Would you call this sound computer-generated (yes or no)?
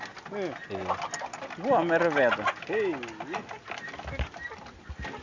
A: no